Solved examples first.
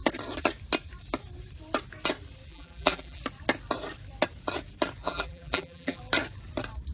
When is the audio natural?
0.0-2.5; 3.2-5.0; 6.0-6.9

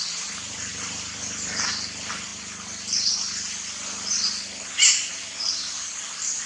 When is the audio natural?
2.3-5.1

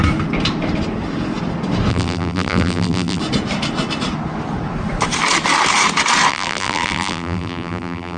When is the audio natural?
0.0-1.9; 3.2-6.3

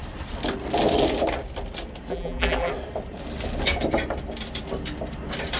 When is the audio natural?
0.0-2.1; 2.7-5.6

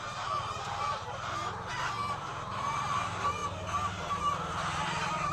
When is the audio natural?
1.7-2.5; 3.4-4.2